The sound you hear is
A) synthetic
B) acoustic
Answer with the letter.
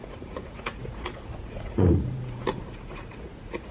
A